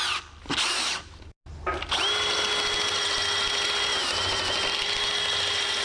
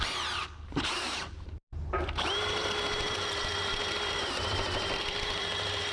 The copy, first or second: second